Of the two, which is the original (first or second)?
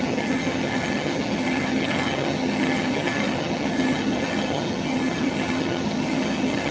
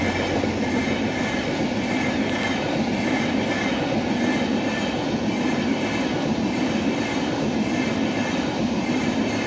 second